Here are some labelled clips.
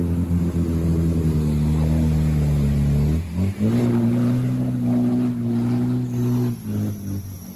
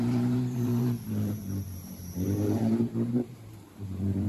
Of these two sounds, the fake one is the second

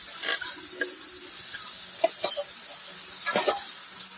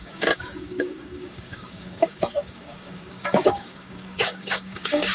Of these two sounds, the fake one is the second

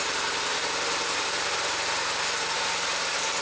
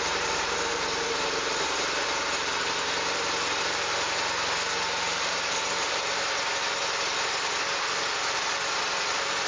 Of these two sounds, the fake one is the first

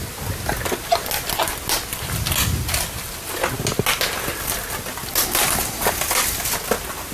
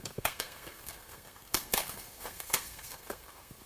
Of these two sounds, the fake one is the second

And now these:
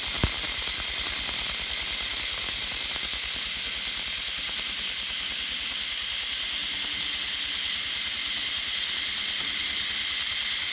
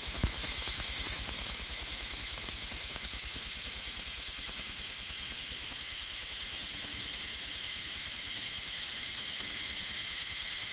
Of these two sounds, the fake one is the second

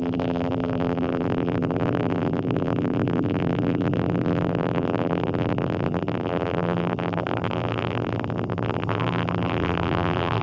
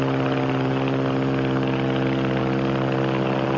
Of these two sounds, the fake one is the first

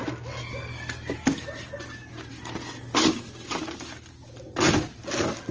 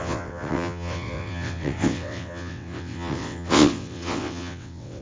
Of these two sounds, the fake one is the second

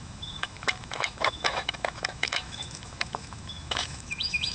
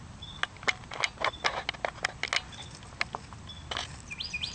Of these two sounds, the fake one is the first